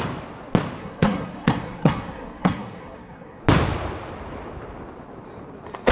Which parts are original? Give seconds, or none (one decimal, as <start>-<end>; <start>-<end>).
0.0-0.8; 3.4-5.9